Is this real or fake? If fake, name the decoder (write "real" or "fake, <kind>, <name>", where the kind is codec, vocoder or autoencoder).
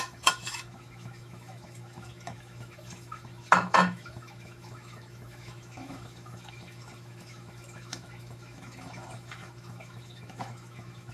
fake, autoencoder, DAC-VAE